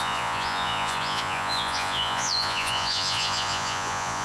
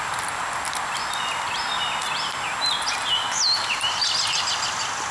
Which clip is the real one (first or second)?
second